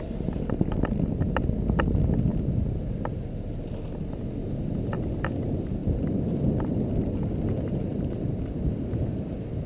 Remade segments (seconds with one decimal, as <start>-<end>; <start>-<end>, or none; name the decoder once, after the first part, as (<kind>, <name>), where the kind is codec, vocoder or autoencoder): 7.9-8.8 (vocoder, BigVGAN v2)